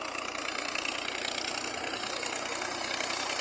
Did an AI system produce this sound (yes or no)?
no